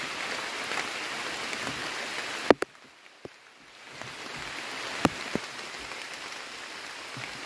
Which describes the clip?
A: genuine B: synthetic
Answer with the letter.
A